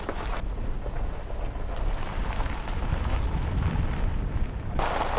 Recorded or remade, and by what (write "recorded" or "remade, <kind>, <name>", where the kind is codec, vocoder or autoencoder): remade, vocoder, BigVGAN v2